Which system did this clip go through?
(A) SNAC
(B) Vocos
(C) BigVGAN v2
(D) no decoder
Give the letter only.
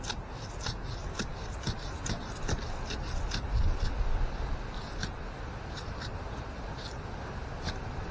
D